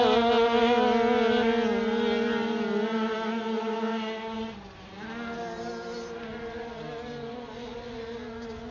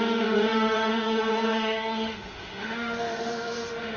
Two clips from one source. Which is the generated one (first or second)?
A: second